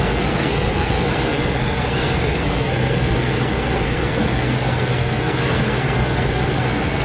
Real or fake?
fake